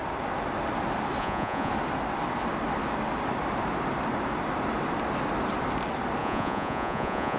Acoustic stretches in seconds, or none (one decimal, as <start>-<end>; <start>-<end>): 0.0-1.2; 1.7-6.2